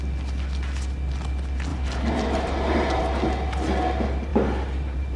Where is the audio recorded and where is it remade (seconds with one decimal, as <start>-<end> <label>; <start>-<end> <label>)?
0.0-1.7 recorded; 1.7-3.0 remade; 3.0-4.3 recorded; 4.3-5.2 remade